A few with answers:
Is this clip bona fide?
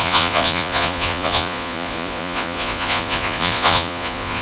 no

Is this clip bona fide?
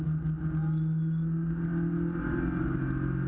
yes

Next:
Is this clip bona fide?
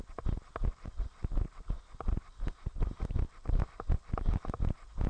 yes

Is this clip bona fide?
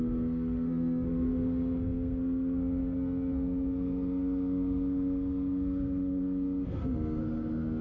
no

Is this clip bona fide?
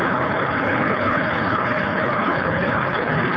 no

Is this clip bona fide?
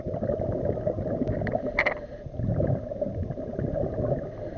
yes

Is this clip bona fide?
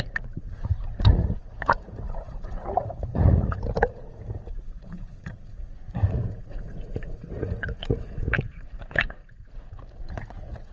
no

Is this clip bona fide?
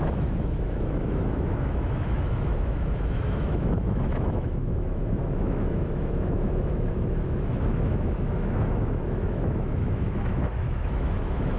no